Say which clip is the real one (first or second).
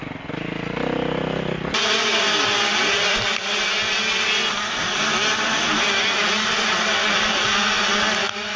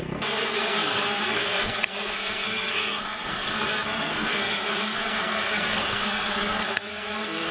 first